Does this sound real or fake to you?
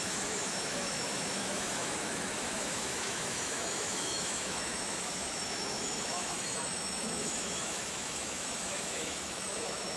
fake